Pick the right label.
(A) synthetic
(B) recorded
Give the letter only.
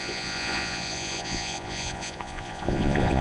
A